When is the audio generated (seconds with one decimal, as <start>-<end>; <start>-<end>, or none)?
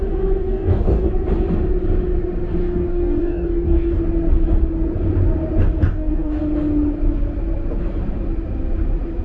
0.4-1.1; 2.6-4.0; 5.9-6.4